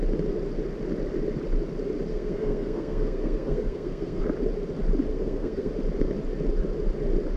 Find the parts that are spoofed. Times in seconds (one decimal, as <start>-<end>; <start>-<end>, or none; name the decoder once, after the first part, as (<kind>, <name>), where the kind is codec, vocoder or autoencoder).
2.1-4.2 (codec, SNAC); 5.1-5.7